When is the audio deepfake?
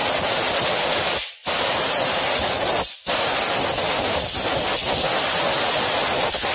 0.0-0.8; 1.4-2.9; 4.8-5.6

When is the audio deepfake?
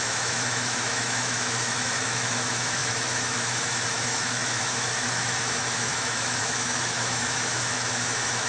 0.0-8.5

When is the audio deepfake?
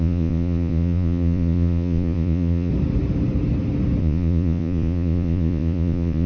0.0-2.7; 4.0-6.3